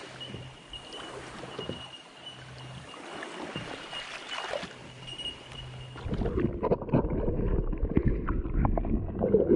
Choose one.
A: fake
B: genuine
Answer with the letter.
B